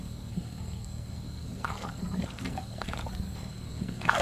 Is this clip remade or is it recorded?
remade